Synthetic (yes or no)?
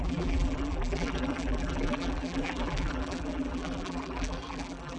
yes